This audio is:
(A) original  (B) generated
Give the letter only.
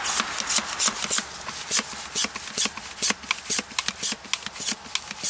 A